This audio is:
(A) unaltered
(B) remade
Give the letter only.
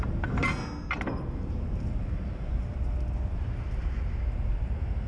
A